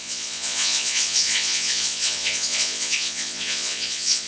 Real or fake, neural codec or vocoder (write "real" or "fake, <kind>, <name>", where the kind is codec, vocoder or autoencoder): fake, vocoder, Vocos